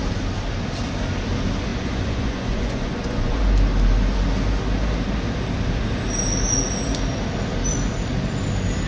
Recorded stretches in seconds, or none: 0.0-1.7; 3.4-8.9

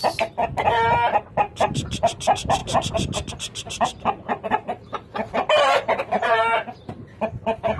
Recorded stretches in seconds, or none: 0.0-1.2